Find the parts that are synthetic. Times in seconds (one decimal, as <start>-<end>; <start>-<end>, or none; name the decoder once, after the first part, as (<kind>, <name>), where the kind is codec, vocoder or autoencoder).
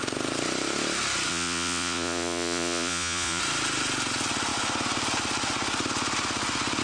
1.3-3.4 (vocoder, Vocos)